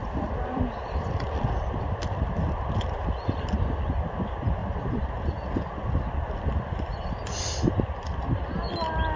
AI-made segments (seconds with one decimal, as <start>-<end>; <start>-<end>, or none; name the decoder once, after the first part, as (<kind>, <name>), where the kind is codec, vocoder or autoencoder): 0.0-2.6 (vocoder, BigVGAN v2); 4.6-6.7